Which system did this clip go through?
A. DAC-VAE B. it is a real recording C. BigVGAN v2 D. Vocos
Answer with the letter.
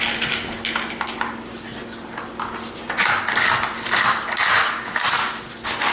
B